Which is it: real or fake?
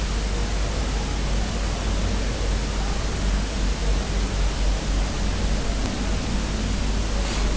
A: real